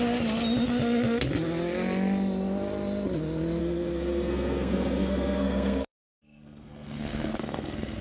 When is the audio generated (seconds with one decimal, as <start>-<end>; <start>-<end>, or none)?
3.6-8.0